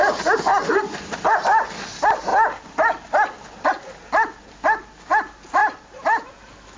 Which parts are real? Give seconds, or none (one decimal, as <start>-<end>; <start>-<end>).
0.0-6.8